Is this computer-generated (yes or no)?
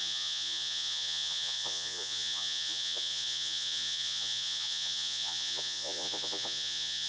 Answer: yes